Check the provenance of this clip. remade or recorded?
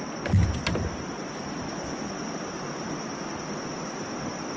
recorded